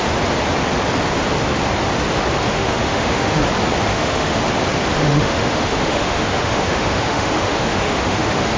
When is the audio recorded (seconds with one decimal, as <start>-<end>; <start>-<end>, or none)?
0.0-2.5; 3.4-3.9; 4.4-5.0